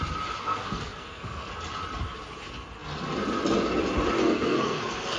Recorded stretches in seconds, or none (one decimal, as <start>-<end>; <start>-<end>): 0.0-0.4; 1.5-4.2